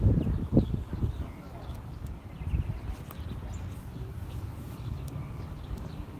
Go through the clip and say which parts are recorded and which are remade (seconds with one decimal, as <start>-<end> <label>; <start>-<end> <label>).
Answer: 0.0-0.4 recorded; 0.4-2.3 remade; 2.3-3.9 recorded; 3.9-6.2 remade